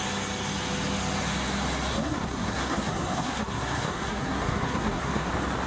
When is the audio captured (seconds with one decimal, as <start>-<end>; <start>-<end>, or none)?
0.0-1.9; 5.3-5.7

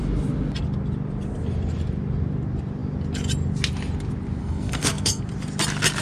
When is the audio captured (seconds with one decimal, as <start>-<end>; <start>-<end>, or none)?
0.0-4.4; 5.2-6.0

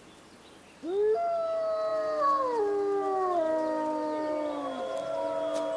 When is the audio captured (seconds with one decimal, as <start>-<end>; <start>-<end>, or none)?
0.0-5.8

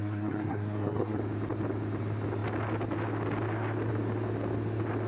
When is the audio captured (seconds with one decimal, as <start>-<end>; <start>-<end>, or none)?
1.2-5.1

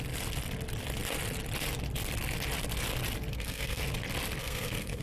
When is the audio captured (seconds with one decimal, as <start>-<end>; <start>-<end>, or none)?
0.0-3.3; 3.8-4.4